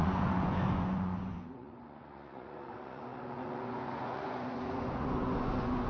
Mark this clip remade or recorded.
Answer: remade